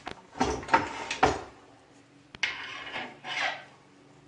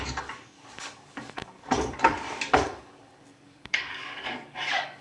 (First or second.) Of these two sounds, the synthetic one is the second